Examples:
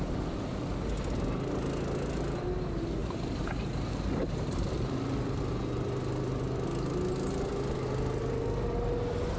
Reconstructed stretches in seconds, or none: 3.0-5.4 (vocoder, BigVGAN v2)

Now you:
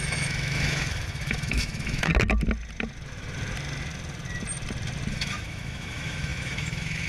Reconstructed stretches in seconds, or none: 0.0-2.1 (autoencoder, DAC-VAE); 5.1-7.1

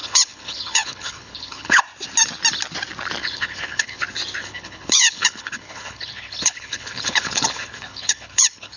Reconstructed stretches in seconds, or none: 0.0-1.8 (codec, HILCodec); 3.2-4.0; 4.4-8.8